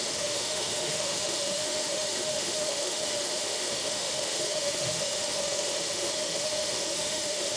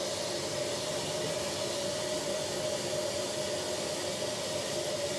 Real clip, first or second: second